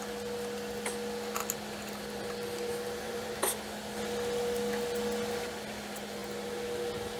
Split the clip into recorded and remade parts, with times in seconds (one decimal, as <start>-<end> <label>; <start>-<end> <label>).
0.0-2.7 recorded; 2.7-3.3 remade; 3.3-7.2 recorded